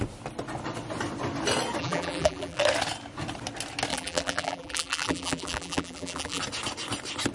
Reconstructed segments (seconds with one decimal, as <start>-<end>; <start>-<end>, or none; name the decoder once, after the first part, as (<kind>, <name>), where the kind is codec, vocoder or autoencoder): 1.8-2.6 (vocoder, BigVGAN v2); 3.9-6.4